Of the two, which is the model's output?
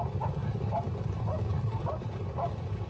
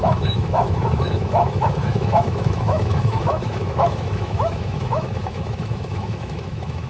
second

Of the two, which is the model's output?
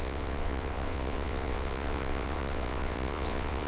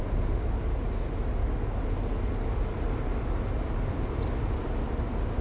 first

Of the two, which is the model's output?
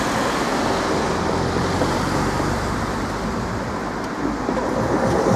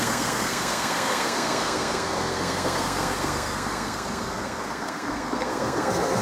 second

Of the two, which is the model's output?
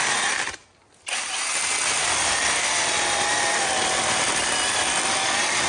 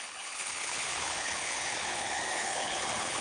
second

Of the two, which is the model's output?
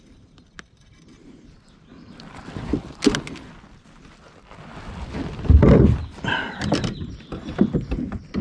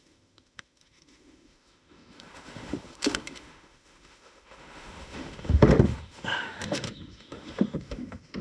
second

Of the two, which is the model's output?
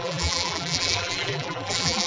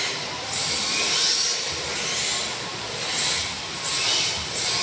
first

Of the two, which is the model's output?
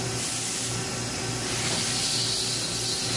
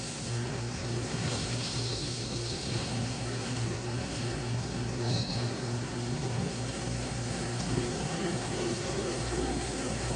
second